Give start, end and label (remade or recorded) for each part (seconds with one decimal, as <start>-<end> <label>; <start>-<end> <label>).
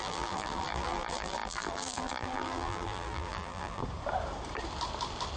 0.0-3.8 remade; 3.8-5.4 recorded